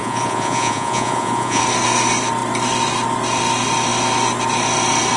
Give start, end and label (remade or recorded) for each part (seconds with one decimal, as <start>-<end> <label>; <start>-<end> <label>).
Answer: 0.0-1.6 remade; 1.6-5.2 recorded